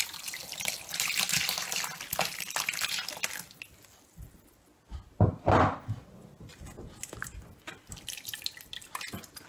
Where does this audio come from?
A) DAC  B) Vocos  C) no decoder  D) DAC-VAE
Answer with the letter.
C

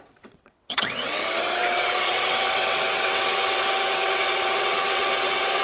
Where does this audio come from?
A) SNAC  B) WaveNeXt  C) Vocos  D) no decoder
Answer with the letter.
B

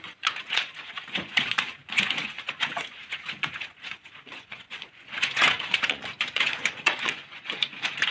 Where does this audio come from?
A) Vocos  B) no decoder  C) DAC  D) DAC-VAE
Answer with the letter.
A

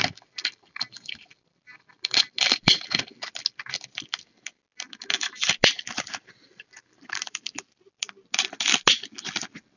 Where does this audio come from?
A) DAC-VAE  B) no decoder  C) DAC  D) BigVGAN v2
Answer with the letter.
B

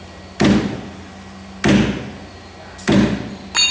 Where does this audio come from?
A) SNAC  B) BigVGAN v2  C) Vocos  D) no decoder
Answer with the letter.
D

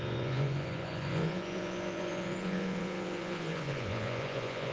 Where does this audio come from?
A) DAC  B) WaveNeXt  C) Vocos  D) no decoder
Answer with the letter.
C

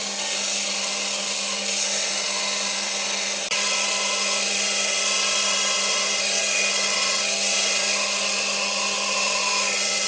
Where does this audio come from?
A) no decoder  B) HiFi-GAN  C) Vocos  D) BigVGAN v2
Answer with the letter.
A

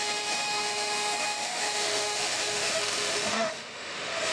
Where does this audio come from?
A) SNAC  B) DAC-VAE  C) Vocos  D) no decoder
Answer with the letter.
B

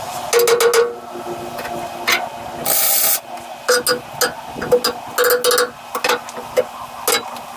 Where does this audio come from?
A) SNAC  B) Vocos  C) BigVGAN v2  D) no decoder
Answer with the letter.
D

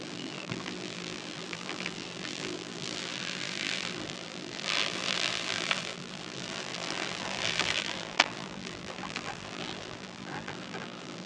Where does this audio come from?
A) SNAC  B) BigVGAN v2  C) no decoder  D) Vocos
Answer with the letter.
B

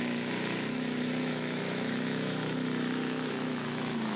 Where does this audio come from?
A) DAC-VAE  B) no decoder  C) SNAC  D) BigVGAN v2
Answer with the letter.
A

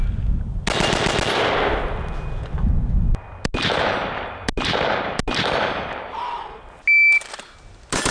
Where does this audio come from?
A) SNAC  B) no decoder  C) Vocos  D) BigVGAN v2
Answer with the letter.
B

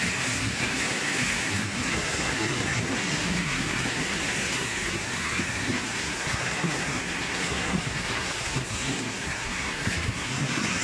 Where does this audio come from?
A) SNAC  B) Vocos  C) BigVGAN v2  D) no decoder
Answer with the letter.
A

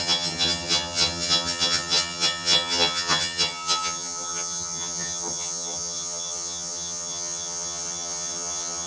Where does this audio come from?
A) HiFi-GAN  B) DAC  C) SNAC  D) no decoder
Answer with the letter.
A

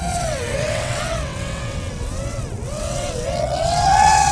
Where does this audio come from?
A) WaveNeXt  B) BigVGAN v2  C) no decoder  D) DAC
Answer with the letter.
A